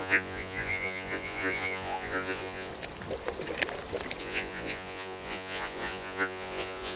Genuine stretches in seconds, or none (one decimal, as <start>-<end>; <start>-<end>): 2.7-4.2